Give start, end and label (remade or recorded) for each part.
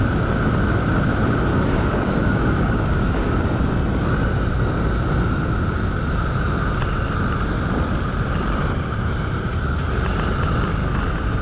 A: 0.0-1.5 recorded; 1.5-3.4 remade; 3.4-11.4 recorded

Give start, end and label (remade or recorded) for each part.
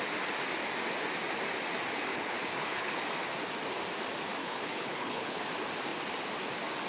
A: 0.0-2.1 recorded; 2.1-2.9 remade; 2.9-4.4 recorded; 4.4-5.4 remade; 5.4-6.9 recorded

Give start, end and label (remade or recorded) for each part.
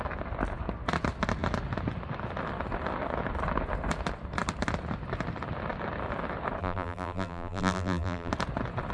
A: 0.0-6.6 recorded; 6.6-8.3 remade; 8.3-8.9 recorded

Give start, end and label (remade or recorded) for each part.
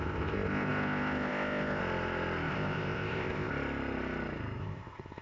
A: 0.0-1.8 remade; 1.8-2.5 recorded; 2.5-3.5 remade; 3.5-4.6 recorded; 4.6-5.2 remade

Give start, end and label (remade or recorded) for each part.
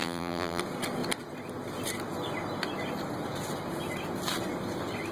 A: 0.0-0.6 remade; 0.6-5.1 recorded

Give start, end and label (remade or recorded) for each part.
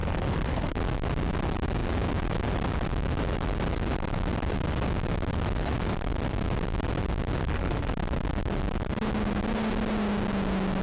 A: 0.0-0.8 remade; 0.8-7.4 recorded; 7.4-7.9 remade; 7.9-10.8 recorded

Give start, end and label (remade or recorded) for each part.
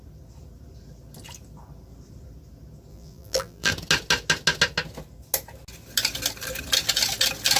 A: 0.0-2.9 recorded; 2.9-3.7 remade; 3.7-7.6 recorded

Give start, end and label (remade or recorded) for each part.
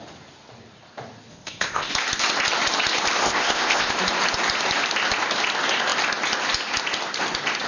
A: 0.0-1.3 recorded; 1.3-1.9 remade; 1.9-3.2 recorded; 3.2-4.0 remade; 4.0-7.7 recorded